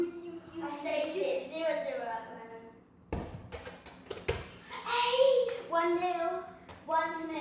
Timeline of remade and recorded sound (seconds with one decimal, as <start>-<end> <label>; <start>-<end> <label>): 0.0-6.7 recorded; 6.7-7.4 remade